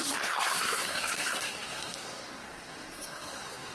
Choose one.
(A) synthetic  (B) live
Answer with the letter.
A